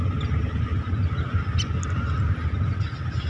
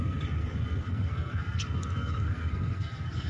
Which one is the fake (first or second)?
second